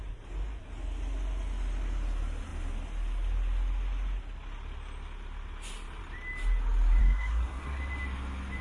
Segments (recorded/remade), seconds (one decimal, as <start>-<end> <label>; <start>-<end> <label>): 0.0-7.0 recorded; 7.0-7.8 remade; 7.8-8.6 recorded

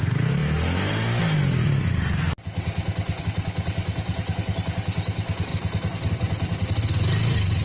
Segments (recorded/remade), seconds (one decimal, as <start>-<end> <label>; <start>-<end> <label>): 0.0-7.6 recorded

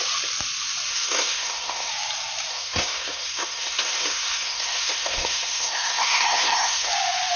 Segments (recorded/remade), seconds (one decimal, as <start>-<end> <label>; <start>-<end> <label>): 0.0-0.9 recorded; 0.9-1.9 remade; 1.9-2.5 recorded; 2.5-6.9 remade; 6.9-7.4 recorded

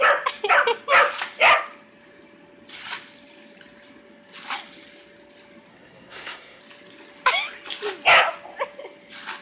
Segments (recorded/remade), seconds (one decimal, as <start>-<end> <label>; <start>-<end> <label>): 0.0-5.7 recorded; 5.7-6.6 remade; 6.6-9.4 recorded

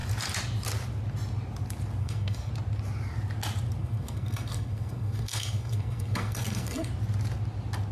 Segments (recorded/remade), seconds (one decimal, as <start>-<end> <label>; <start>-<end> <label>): 0.0-2.0 recorded; 2.0-2.5 remade; 2.5-3.8 recorded; 3.8-6.9 remade; 6.9-7.9 recorded

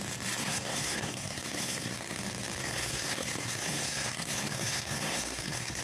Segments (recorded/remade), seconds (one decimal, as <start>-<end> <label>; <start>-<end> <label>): 0.0-0.4 recorded; 0.4-2.2 remade; 2.2-2.6 recorded; 2.6-5.8 remade

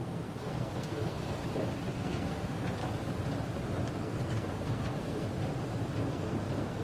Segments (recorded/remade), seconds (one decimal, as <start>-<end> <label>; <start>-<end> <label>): 0.0-1.4 remade; 1.4-1.9 recorded; 1.9-2.8 remade; 2.8-3.9 recorded; 3.9-5.3 remade; 5.3-6.1 recorded; 6.1-6.8 remade